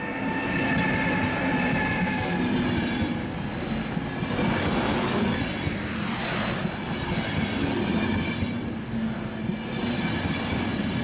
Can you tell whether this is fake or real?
real